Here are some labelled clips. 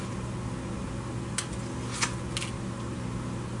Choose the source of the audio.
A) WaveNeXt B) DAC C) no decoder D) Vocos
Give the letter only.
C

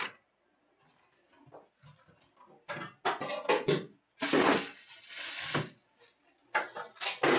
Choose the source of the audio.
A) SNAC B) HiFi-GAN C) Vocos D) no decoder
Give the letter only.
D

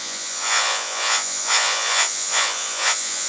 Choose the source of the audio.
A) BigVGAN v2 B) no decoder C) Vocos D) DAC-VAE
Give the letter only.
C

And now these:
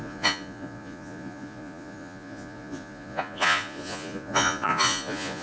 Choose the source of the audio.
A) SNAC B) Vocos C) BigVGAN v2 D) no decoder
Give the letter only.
B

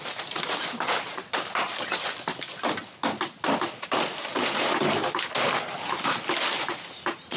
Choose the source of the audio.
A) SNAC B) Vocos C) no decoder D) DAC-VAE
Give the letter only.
C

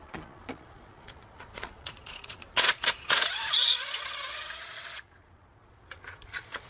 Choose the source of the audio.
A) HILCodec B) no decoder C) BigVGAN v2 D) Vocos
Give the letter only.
D